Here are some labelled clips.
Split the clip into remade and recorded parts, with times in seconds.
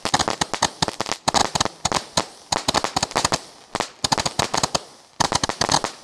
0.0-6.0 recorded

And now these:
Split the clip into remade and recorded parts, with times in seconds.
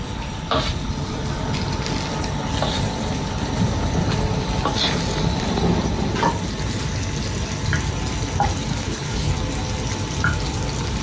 0.0-8.7 recorded; 8.7-9.3 remade; 9.3-11.0 recorded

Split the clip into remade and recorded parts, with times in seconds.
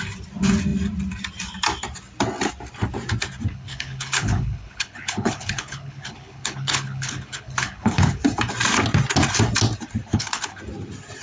0.0-3.5 recorded; 3.5-8.2 remade; 8.2-10.1 recorded; 10.1-10.6 remade; 10.6-11.2 recorded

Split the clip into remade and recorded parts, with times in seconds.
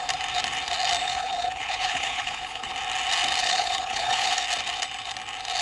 0.0-1.0 recorded; 1.0-2.7 remade; 2.7-3.4 recorded; 3.4-4.3 remade; 4.3-5.6 recorded